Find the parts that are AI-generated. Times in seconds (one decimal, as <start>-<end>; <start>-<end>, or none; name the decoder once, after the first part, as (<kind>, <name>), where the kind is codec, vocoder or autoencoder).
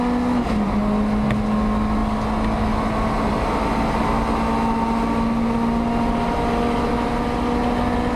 none